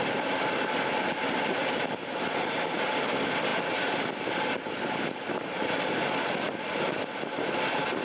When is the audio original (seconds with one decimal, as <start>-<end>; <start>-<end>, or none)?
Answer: 0.0-8.0